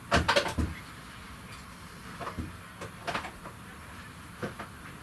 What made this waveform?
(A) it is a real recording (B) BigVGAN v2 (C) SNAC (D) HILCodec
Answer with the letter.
A